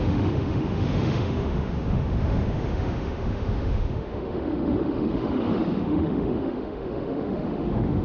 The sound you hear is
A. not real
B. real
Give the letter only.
A